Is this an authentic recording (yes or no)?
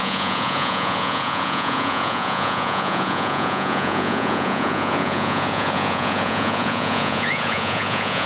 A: no